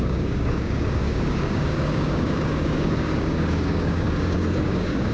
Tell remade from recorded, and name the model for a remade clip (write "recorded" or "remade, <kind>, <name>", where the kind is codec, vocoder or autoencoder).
remade, codec, DAC